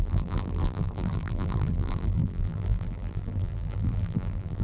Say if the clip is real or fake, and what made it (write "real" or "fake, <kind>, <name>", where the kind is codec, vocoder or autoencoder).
fake, vocoder, BigVGAN v2